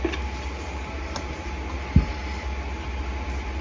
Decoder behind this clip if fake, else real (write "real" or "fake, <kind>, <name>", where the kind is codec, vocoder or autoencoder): real